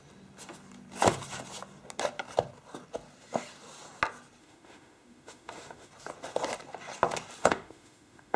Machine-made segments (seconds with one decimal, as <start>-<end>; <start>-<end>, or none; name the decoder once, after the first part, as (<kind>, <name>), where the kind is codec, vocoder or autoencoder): 4.4-5.9 (autoencoder, DAC-VAE); 7.4-8.4